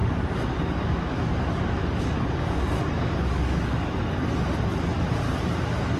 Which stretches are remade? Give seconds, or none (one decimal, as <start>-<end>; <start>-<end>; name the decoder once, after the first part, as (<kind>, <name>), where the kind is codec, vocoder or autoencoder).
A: 0.0-1.3 (codec, DAC); 1.8-4.3